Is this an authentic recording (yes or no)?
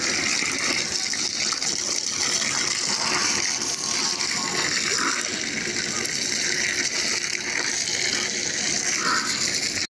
yes